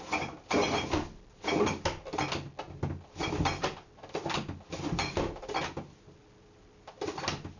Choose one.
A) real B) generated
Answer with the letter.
A